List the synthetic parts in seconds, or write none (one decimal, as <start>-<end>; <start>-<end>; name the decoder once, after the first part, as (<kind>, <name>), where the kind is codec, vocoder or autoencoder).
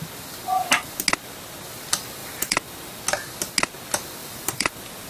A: 2.2-3.0 (vocoder, BigVGAN v2); 4.2-5.1